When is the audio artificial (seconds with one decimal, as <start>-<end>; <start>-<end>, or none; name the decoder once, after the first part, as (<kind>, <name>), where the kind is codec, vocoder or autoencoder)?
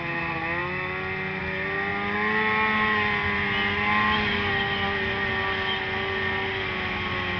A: none